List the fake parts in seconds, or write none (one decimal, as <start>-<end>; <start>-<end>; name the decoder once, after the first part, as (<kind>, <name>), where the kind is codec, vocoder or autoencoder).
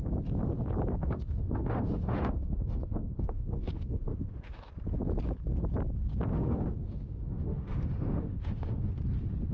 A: 0.9-4.7 (autoencoder, DAC-VAE); 6.3-8.9